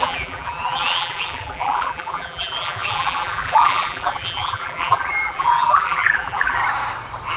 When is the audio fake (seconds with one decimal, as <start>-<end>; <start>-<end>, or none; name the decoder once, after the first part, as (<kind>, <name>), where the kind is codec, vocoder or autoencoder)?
0.0-6.6 (vocoder, BigVGAN v2)